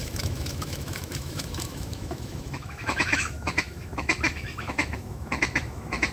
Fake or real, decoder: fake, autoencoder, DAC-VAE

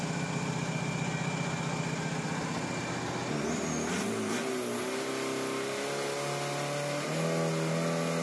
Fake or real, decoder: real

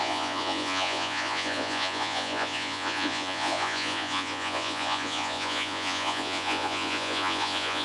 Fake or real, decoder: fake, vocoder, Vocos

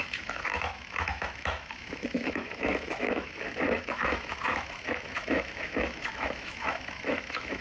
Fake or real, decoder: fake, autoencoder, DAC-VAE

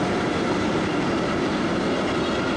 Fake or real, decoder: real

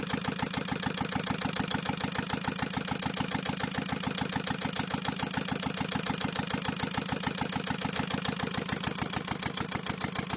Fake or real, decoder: real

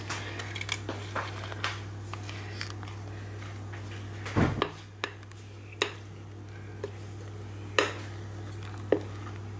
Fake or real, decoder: real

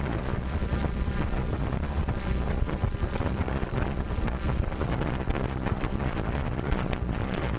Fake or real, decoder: fake, vocoder, Vocos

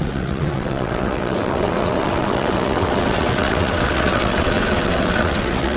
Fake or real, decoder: fake, vocoder, WaveNeXt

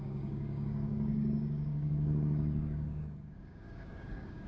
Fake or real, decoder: fake, codec, DAC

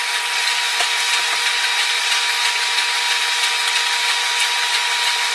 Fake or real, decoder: real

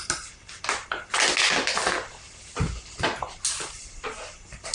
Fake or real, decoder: real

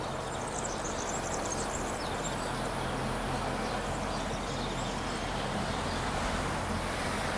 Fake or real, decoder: real